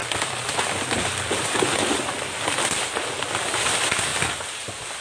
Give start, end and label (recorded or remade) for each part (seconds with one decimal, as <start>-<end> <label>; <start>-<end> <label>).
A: 0.0-1.9 remade; 1.9-5.0 recorded